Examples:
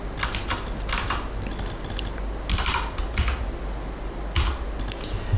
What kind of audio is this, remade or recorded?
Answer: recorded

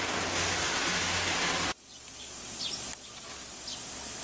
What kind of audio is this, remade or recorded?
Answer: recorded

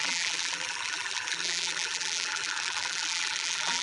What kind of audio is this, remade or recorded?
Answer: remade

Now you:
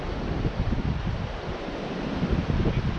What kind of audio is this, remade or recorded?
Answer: recorded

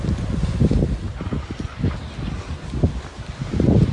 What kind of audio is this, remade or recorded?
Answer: recorded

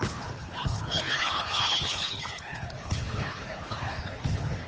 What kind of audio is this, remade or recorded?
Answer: remade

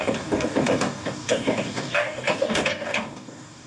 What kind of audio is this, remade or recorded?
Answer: remade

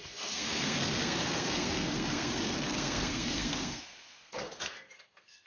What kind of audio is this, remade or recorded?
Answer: remade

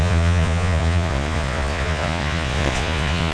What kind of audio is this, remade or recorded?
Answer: remade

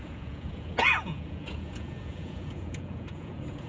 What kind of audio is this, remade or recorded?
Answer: remade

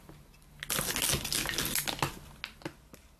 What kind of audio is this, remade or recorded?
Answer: recorded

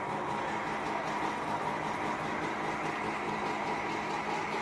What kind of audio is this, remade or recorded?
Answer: recorded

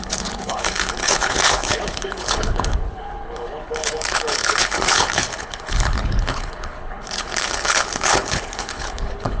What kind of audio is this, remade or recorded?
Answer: remade